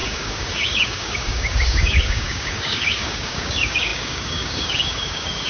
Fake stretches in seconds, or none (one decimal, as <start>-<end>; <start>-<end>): 0.0-5.5